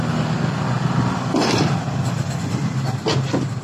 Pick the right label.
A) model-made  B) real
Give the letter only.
B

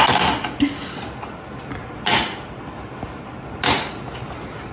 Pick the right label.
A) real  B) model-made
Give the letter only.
A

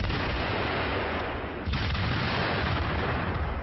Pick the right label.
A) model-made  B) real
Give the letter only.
A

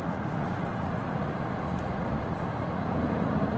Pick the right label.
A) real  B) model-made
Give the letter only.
B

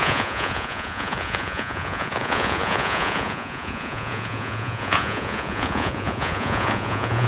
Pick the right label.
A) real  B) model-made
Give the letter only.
B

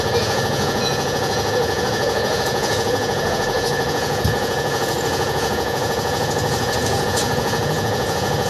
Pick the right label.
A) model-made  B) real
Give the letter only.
A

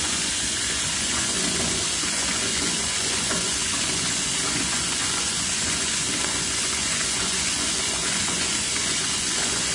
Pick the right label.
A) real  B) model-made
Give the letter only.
B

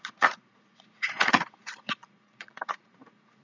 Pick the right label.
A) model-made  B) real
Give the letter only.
A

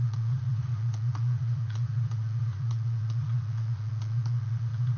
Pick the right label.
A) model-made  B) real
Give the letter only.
A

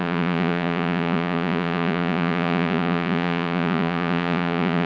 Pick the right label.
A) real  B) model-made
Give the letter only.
B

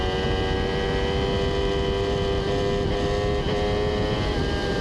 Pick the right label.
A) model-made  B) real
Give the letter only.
B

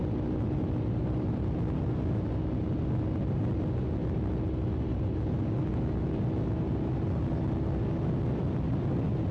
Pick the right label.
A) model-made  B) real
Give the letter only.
B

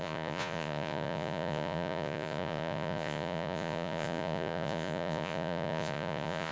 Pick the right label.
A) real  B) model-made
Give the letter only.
B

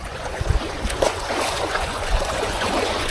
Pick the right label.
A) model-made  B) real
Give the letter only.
A